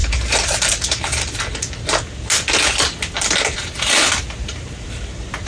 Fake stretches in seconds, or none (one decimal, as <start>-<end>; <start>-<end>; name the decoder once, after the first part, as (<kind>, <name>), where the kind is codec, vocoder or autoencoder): 0.0-1.1 (vocoder, BigVGAN v2); 4.2-5.5